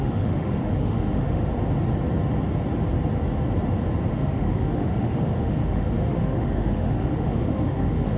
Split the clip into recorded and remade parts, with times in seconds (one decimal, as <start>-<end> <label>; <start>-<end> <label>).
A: 0.0-1.5 remade; 1.5-4.1 recorded; 4.1-8.2 remade